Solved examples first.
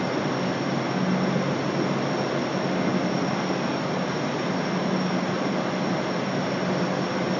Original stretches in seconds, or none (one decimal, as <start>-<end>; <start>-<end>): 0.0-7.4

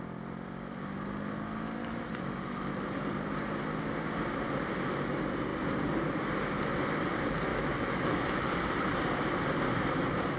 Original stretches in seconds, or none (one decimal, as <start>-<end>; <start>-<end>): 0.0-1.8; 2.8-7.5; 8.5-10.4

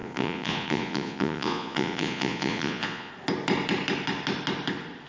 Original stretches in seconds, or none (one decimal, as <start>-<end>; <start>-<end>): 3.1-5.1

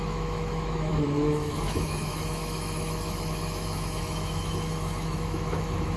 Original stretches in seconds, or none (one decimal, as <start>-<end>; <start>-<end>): none

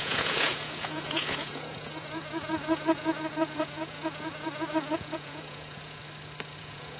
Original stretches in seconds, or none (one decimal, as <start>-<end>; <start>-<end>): 6.0-6.6

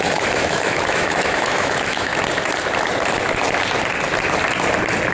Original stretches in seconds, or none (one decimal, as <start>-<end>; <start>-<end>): 2.1-5.1